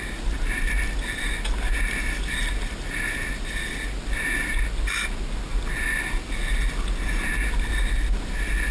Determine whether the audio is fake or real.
real